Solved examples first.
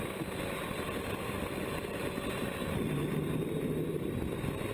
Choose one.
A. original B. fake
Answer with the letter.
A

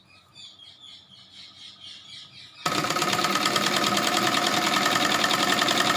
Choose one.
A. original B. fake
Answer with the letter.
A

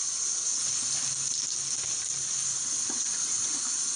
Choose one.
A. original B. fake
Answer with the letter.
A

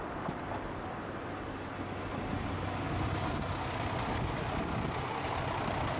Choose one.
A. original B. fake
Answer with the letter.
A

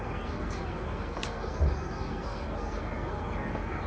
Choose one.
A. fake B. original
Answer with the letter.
A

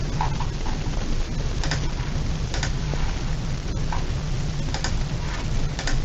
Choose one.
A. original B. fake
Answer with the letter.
A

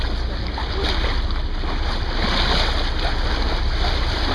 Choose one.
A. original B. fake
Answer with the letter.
A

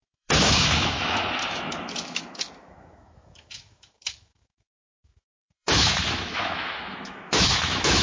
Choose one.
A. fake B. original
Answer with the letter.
A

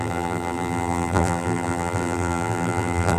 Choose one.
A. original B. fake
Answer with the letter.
B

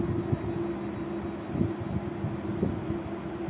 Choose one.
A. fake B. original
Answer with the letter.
B